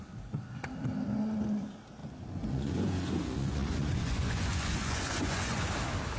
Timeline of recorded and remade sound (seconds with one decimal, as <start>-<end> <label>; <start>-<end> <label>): 0.0-2.0 recorded; 2.0-5.7 remade; 5.7-6.2 recorded